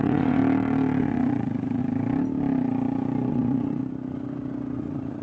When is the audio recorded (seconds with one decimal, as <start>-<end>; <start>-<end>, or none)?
0.4-1.0; 1.8-3.3; 3.8-4.8